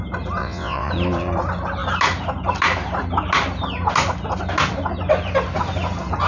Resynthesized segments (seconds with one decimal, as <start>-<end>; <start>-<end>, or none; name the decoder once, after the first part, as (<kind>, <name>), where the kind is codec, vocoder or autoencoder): 0.4-0.9 (vocoder, WaveNeXt)